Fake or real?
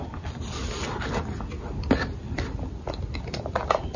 real